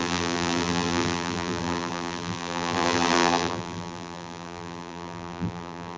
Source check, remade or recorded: remade